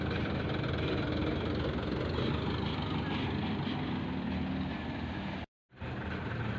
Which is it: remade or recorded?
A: recorded